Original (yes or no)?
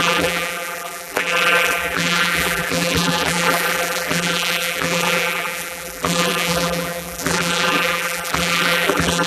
no